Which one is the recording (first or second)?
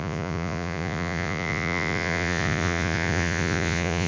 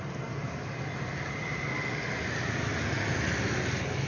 second